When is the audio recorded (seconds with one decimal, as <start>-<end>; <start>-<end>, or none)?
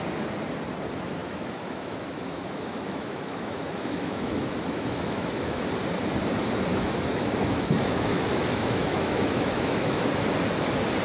0.0-1.2; 5.6-6.7; 10.0-11.0